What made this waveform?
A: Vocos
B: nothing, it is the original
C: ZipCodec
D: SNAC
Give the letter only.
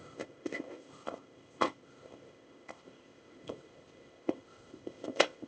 C